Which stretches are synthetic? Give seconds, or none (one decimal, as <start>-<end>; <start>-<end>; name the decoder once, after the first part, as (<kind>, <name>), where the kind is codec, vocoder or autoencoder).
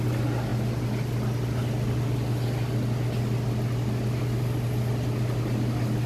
none